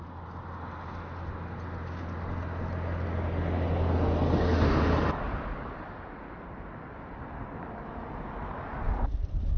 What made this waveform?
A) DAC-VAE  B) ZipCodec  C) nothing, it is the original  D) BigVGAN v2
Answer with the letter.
C